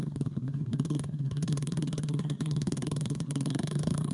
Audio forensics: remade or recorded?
remade